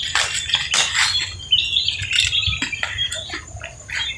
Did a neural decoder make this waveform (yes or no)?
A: no